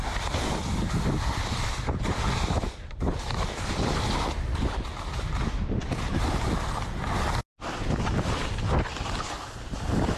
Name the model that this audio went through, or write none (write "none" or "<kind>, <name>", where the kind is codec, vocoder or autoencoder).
none